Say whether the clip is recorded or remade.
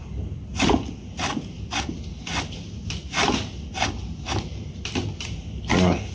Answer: recorded